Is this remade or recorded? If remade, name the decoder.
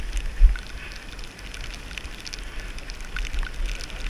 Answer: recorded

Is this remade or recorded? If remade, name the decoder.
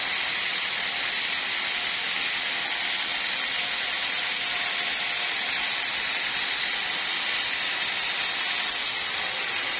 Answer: recorded